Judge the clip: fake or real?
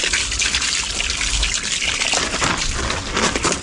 real